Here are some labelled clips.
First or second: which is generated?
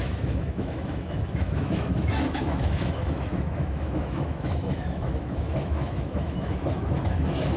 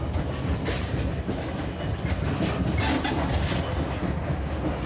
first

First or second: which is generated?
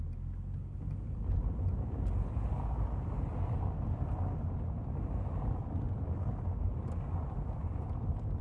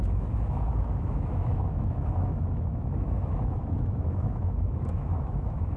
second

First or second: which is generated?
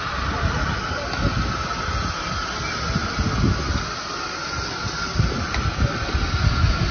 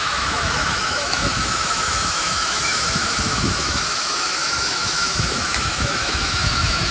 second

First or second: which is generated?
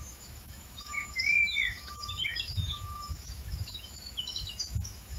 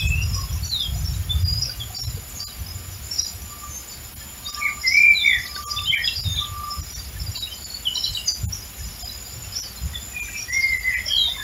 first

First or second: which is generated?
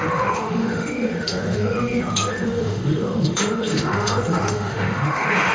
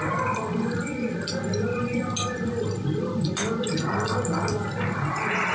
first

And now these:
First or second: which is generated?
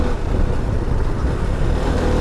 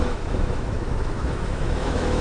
second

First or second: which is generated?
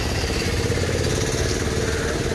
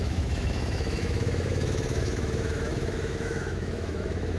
second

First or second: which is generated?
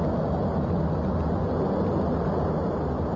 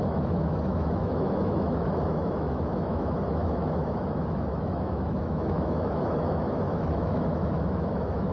second